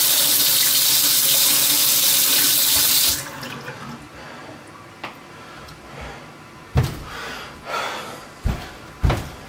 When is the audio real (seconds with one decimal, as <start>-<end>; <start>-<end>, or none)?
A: 0.0-9.5